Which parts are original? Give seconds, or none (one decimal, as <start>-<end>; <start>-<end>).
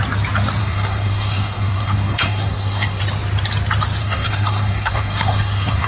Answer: 0.0-0.6; 3.0-4.0